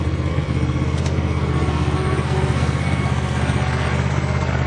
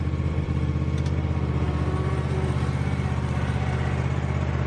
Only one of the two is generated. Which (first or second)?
first